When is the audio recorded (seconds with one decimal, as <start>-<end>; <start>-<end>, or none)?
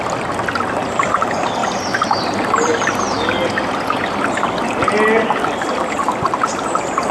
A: 0.0-1.6; 2.5-6.0